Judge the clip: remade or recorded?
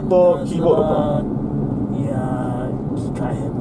remade